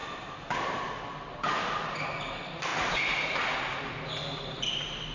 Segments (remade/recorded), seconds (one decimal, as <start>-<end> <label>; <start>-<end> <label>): 0.0-5.1 recorded